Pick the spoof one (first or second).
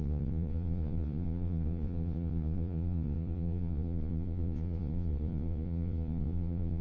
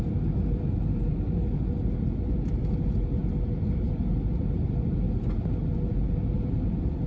first